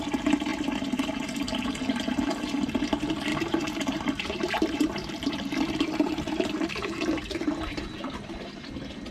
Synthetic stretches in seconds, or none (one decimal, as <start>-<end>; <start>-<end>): 3.3-7.8